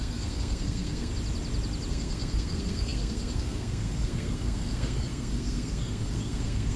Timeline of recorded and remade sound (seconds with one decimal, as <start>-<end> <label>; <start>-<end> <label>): 0.0-1.1 remade; 1.1-1.9 recorded; 1.9-6.8 remade